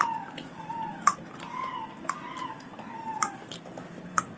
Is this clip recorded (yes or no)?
yes